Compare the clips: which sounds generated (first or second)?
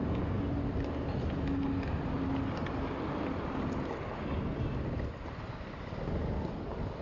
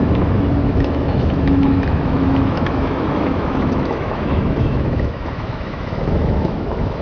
second